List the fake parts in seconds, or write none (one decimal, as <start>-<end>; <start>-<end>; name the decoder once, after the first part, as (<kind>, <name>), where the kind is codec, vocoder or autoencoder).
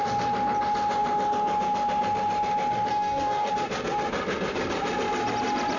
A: 2.9-3.5 (codec, DAC)